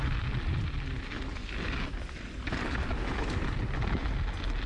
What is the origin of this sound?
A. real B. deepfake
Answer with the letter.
A